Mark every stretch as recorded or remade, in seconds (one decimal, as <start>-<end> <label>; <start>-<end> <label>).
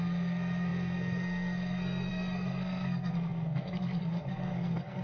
0.0-5.0 remade